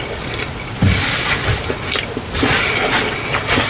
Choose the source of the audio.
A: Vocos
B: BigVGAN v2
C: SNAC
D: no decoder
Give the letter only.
D